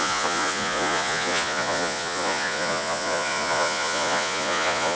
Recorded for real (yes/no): no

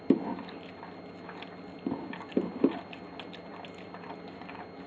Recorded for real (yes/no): yes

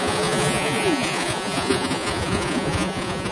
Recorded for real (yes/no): no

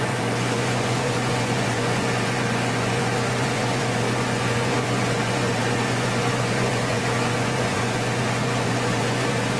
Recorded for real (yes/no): no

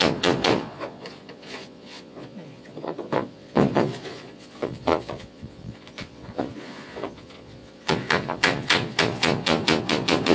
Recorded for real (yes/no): no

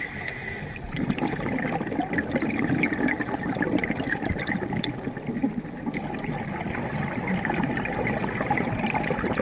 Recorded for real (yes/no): yes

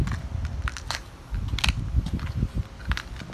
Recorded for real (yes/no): yes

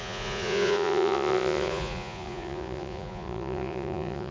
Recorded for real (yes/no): no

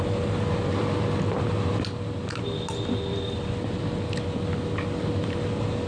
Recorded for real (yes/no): yes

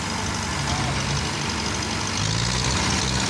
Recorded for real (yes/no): yes